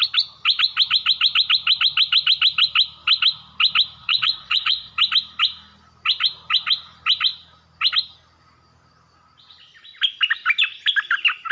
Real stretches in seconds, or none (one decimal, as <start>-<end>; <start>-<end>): 0.0-4.0; 4.9-11.5